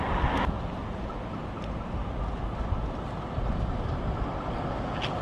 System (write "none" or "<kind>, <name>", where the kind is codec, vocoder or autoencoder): none